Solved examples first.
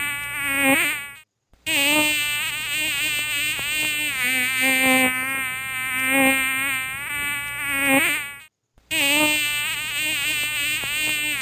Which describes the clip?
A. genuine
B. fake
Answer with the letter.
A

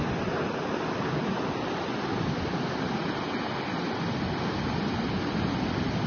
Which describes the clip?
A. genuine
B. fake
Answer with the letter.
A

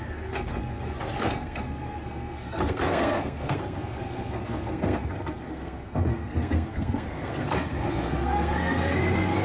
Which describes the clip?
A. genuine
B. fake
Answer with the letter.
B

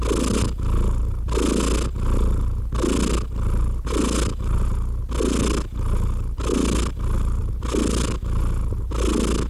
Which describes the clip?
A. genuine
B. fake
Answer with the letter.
A